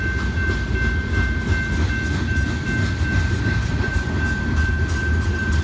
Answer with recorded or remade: recorded